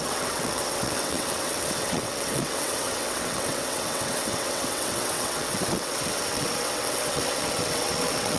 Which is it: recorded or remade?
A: remade